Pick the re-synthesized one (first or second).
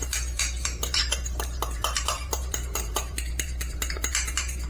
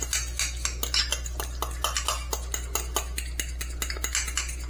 first